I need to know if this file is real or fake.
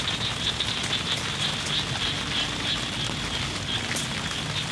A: real